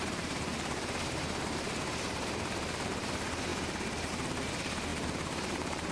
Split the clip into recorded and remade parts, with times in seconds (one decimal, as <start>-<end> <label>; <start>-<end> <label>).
0.0-3.5 remade; 3.5-4.1 recorded; 4.1-5.9 remade

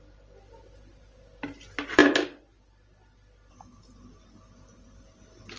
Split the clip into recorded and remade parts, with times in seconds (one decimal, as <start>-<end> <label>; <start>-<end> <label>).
0.0-5.6 recorded

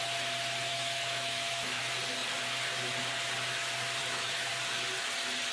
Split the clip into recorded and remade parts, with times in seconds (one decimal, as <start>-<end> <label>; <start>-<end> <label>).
0.0-0.7 recorded; 0.7-1.8 remade; 1.8-4.0 recorded; 4.0-4.5 remade; 4.5-5.5 recorded

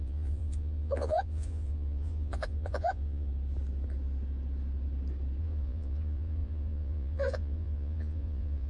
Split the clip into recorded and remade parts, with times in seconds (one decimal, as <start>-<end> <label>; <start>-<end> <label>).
0.0-3.3 remade; 3.3-5.4 recorded; 5.4-8.7 remade

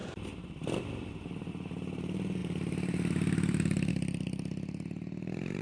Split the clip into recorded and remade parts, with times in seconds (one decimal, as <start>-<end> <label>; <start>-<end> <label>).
0.0-5.6 remade